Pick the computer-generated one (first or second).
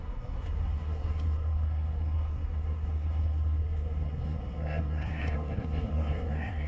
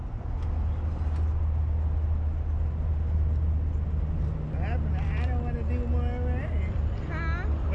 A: first